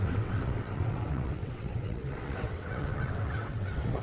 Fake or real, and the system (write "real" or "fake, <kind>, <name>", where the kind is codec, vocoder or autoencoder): fake, vocoder, WaveNeXt